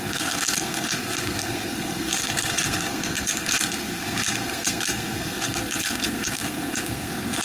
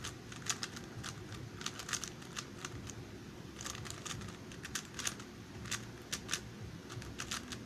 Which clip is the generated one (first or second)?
first